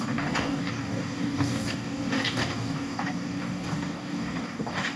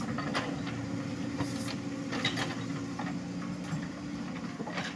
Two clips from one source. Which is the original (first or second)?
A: second